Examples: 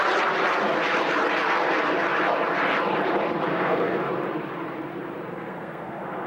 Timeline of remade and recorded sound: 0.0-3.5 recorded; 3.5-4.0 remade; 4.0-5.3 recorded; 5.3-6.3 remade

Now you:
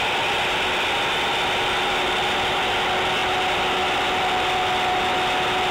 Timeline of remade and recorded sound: 0.0-5.7 recorded

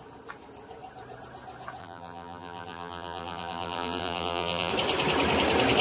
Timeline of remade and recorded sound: 0.0-1.8 recorded; 1.8-4.7 remade; 4.7-5.8 recorded

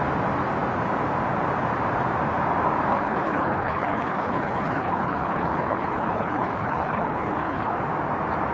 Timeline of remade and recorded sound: 0.0-2.9 recorded; 2.9-7.8 remade; 7.8-8.5 recorded

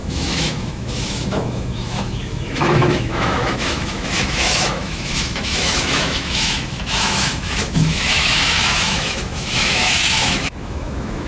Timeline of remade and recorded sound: 0.0-11.3 remade